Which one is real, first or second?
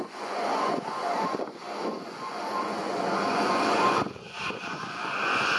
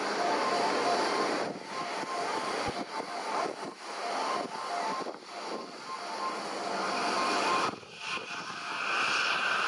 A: second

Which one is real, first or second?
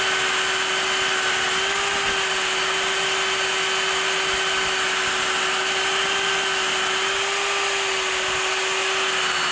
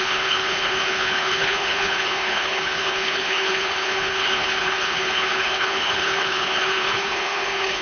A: first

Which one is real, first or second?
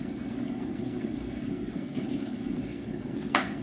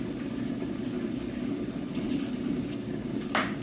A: second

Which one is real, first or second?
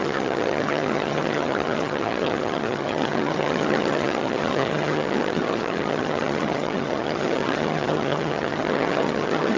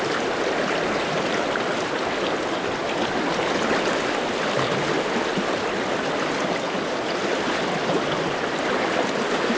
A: second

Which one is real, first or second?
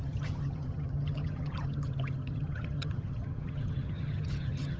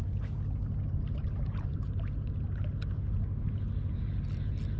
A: second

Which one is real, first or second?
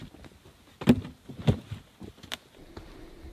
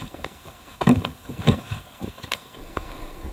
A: first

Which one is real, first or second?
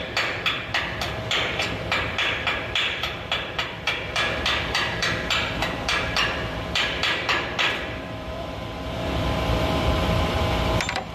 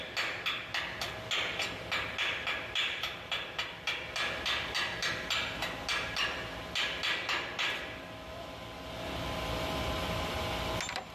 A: second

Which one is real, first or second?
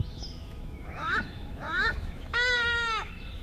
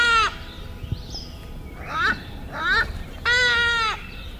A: second